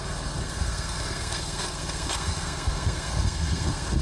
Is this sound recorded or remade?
remade